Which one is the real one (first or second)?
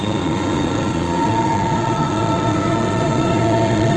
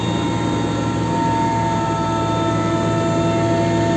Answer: second